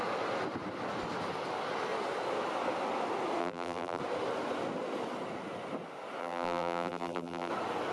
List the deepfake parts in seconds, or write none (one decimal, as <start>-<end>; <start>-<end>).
3.4-4.0; 6.2-7.5